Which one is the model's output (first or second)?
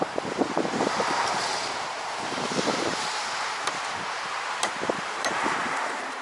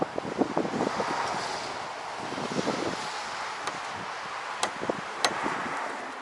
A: first